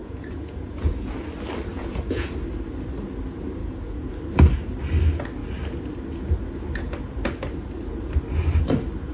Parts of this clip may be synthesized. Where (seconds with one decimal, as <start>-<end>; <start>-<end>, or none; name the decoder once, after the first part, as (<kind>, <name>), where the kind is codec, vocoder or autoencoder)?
0.0-1.1 (vocoder, Vocos); 1.7-2.3; 3.6-4.1